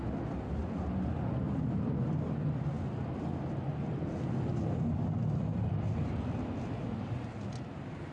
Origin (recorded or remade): recorded